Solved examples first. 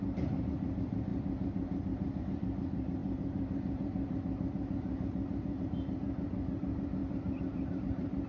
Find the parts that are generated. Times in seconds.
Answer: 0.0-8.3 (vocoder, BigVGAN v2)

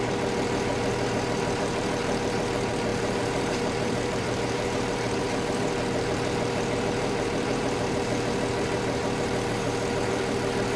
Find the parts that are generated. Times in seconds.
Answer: 0.0-10.8 (vocoder, BigVGAN v2)